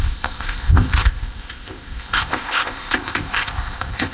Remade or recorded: remade